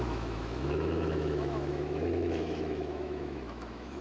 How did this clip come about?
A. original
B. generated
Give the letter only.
B